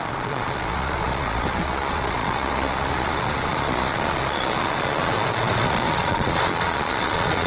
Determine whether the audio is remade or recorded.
remade